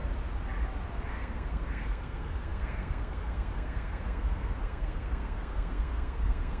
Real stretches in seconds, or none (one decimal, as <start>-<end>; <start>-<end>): 0.0-1.1